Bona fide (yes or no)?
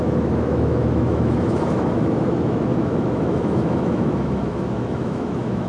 no